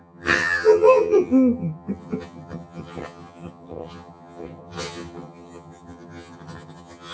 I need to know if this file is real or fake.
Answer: fake